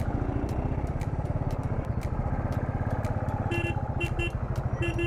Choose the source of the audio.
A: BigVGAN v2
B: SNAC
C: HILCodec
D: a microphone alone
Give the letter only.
D